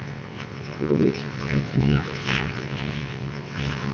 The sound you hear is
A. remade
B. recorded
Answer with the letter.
A